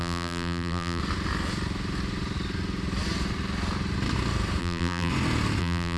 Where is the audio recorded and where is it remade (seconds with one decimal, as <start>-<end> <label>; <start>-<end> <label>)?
0.0-1.0 remade; 1.0-4.6 recorded; 4.6-5.1 remade; 5.1-5.6 recorded; 5.6-6.0 remade